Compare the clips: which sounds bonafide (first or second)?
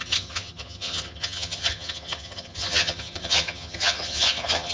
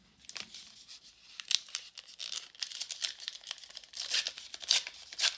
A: second